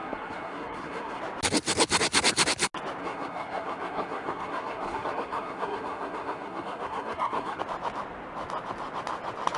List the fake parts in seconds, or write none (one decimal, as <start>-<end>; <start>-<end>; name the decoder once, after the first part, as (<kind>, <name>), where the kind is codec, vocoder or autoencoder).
0.0-1.2 (codec, SNAC); 3.0-7.6